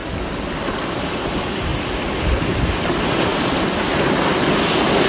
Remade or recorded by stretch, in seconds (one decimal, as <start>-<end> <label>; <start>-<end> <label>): 0.0-1.7 recorded; 1.7-2.6 remade; 2.6-3.3 recorded; 3.3-4.3 remade; 4.3-5.1 recorded

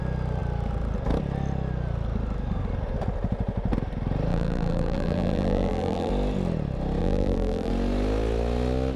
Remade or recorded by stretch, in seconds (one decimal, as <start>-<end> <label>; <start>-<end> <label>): 0.0-4.3 recorded; 4.3-6.1 remade; 6.1-7.0 recorded; 7.0-7.7 remade; 7.7-9.0 recorded

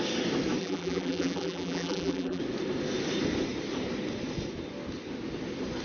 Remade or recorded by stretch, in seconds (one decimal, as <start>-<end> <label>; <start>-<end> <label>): 0.0-0.6 recorded; 0.6-2.4 remade; 2.4-5.8 recorded

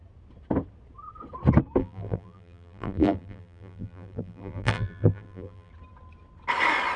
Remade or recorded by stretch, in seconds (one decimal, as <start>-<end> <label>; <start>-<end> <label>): 0.0-1.8 recorded; 1.8-5.7 remade; 5.7-7.0 recorded

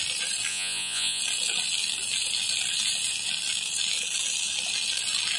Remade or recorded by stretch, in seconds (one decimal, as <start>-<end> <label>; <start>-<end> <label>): 0.0-0.5 recorded; 0.5-1.2 remade; 1.2-5.4 recorded

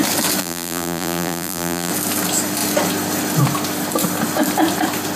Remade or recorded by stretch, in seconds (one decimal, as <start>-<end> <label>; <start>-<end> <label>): 0.0-0.4 recorded; 0.4-1.9 remade; 1.9-5.2 recorded